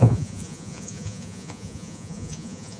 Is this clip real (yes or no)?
no